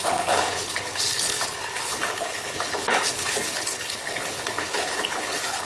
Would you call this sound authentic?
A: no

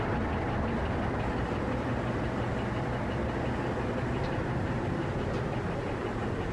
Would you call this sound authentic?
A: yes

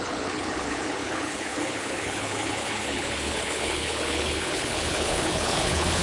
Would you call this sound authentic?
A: no